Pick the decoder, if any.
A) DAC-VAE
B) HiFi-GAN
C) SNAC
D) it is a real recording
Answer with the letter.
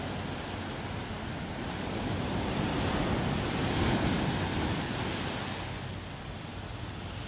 D